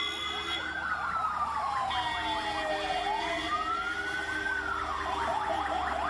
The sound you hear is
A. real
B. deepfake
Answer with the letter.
A